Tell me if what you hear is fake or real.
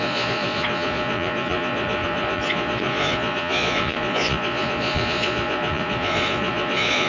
fake